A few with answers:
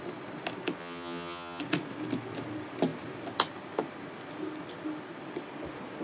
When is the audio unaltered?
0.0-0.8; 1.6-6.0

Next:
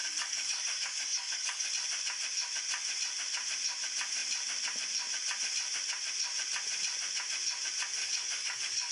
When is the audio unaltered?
1.7-8.0